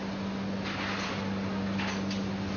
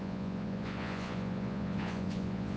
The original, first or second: first